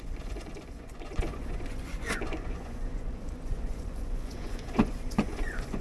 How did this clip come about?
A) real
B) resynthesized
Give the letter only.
B